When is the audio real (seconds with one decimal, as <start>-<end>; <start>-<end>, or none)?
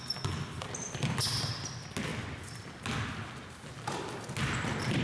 0.0-5.0